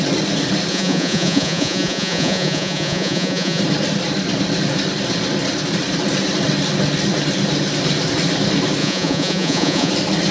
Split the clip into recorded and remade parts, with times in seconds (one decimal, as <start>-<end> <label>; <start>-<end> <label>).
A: 0.0-0.7 recorded; 0.7-3.6 remade; 3.6-8.8 recorded; 8.8-9.9 remade; 9.9-10.3 recorded